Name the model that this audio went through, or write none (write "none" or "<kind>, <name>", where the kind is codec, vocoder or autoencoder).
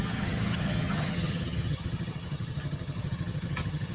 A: vocoder, HiFi-GAN